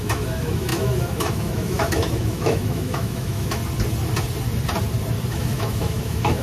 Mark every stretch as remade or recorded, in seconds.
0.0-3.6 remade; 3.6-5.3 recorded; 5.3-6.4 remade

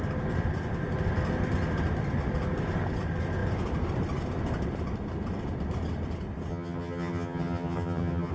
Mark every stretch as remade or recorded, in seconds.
0.0-6.5 recorded; 6.5-8.3 remade

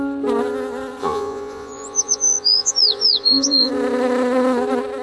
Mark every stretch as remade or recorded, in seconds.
0.0-1.0 recorded; 1.0-3.7 remade; 3.7-5.0 recorded

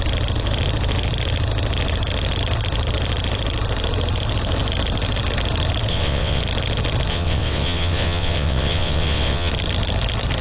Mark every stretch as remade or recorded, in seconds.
0.0-5.9 recorded; 5.9-6.4 remade; 6.4-7.1 recorded; 7.1-9.5 remade; 9.5-10.4 recorded

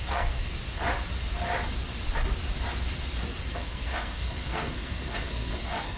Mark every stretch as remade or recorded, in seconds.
0.0-0.5 remade; 0.5-3.5 recorded; 3.5-6.0 remade

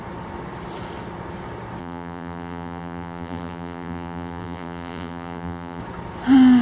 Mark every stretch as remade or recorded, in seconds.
0.0-1.8 recorded; 1.8-5.8 remade; 5.8-6.6 recorded

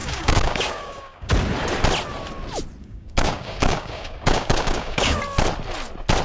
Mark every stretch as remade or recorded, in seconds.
0.0-1.3 remade; 1.3-2.8 recorded; 2.8-5.2 remade; 5.2-6.2 recorded